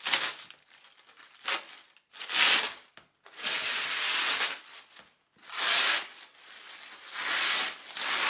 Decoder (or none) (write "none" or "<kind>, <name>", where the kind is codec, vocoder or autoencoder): none